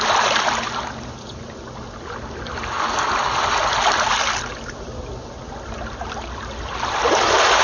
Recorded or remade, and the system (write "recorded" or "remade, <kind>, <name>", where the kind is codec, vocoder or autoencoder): recorded